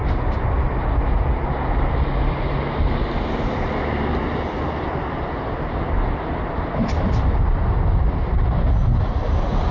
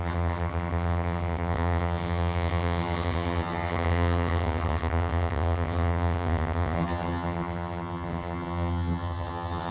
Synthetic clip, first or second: second